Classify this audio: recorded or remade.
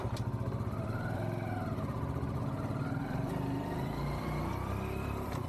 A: remade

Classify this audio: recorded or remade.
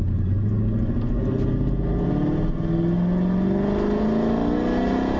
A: recorded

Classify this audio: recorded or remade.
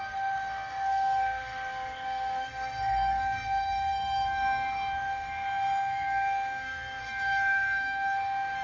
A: remade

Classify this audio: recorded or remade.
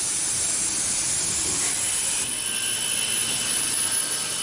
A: recorded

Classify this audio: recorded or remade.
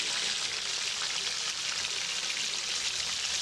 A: recorded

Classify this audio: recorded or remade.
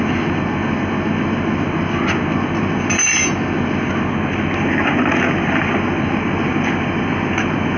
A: recorded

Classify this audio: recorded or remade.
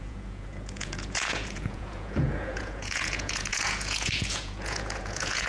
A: remade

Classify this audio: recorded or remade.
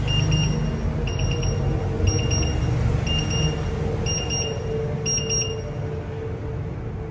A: recorded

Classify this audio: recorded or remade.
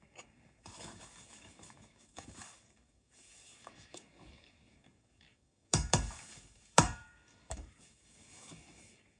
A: remade